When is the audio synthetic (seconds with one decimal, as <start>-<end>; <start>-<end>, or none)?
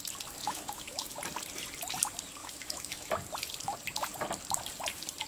0.4-1.2; 2.4-3.1